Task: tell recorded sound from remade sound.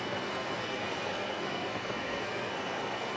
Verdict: remade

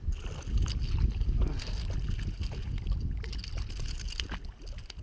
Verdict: recorded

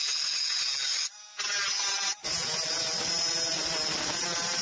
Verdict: recorded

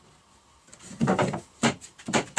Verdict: recorded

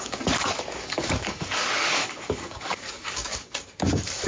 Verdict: remade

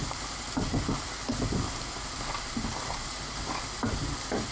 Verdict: recorded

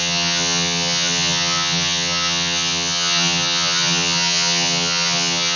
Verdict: remade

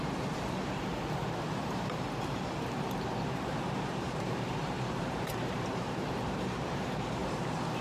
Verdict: remade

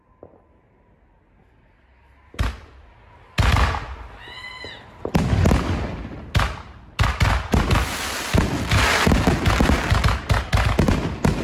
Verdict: recorded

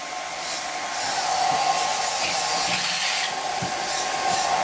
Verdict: recorded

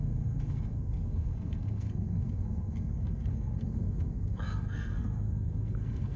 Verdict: remade